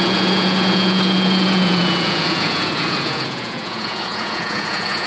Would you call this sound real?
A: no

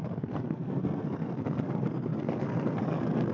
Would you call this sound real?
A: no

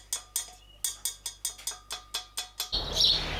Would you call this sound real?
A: yes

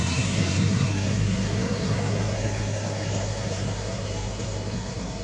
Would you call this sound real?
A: no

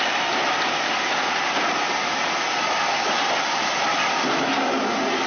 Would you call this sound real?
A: yes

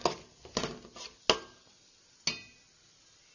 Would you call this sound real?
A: yes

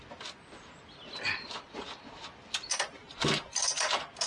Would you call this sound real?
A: yes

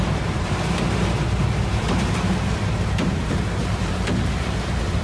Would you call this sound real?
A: no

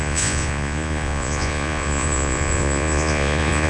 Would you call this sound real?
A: no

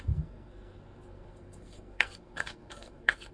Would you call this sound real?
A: no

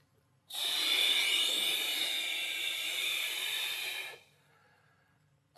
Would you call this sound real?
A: yes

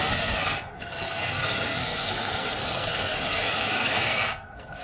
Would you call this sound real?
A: no